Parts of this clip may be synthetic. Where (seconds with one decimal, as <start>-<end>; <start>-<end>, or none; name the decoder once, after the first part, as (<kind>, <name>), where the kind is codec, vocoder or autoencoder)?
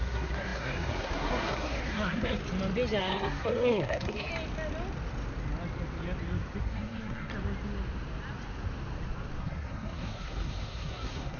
0.0-2.4 (codec, SNAC); 3.0-4.3; 6.6-7.3; 9.4-11.4